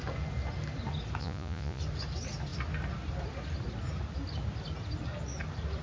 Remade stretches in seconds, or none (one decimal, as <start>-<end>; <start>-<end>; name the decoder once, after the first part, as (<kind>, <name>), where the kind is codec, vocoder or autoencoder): 1.2-1.8 (vocoder, Vocos)